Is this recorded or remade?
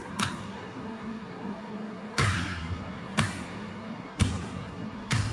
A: remade